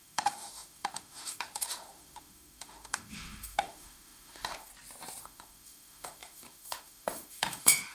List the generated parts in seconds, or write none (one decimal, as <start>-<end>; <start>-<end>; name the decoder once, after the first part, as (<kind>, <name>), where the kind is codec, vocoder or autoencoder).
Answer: 0.0-4.7 (autoencoder, DAC-VAE); 5.2-7.9